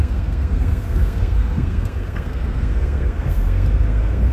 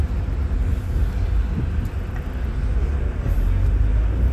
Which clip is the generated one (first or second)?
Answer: first